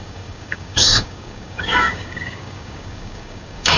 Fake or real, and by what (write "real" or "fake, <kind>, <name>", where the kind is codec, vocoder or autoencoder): fake, codec, DAC